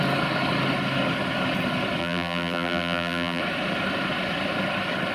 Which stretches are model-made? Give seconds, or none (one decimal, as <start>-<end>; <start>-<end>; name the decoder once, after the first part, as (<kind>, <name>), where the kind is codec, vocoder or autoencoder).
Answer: 2.0-3.4 (vocoder, BigVGAN v2)